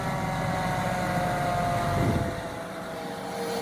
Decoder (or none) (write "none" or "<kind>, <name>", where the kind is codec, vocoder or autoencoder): none